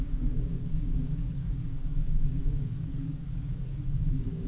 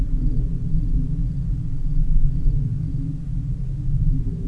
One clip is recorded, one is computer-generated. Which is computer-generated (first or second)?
first